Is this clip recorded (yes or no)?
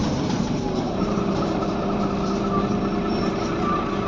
no